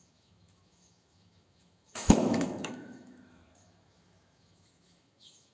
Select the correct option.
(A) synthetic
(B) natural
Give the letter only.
A